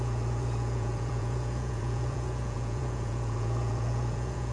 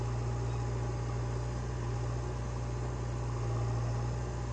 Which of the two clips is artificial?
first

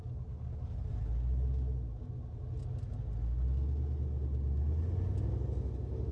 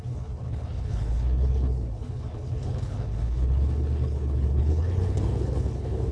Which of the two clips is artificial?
second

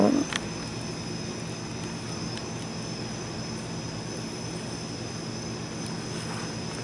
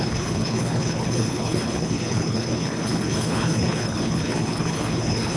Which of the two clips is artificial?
second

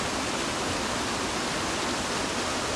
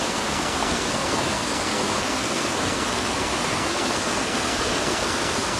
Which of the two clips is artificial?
second